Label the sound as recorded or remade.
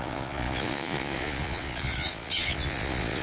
remade